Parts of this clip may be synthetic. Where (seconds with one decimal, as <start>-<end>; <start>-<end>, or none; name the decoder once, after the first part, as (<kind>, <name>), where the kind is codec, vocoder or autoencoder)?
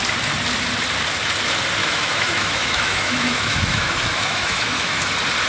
1.8-5.1 (autoencoder, DAC-VAE)